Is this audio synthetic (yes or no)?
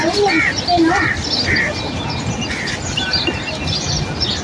no